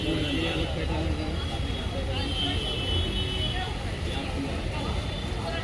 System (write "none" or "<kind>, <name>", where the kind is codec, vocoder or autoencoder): none